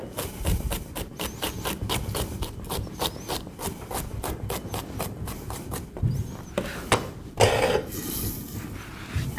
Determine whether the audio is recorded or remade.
recorded